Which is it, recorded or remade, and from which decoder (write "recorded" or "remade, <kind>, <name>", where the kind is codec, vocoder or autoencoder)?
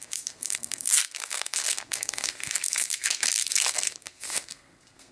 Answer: remade, codec, SNAC